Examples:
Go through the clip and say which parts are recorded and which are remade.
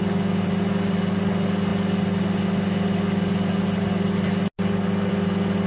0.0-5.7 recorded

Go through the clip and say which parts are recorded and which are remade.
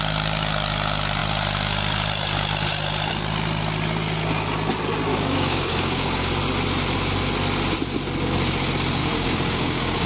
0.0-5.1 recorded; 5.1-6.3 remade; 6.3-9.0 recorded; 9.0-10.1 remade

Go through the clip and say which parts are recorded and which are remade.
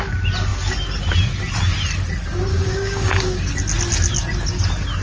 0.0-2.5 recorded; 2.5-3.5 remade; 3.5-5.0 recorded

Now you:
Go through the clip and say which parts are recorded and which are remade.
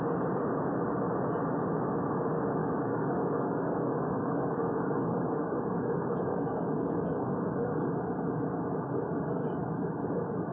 0.0-2.6 recorded; 2.6-7.9 remade; 7.9-10.5 recorded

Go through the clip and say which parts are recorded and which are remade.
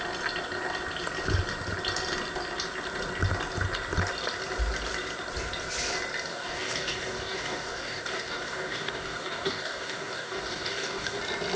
0.0-6.3 recorded; 6.3-11.2 remade; 11.2-11.6 recorded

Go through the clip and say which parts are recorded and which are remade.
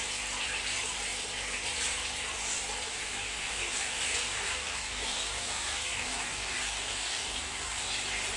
0.0-2.9 recorded; 2.9-7.9 remade; 7.9-8.4 recorded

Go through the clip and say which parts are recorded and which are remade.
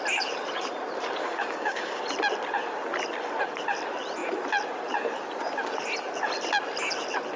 0.0-1.2 recorded; 1.2-2.0 remade; 2.0-7.4 recorded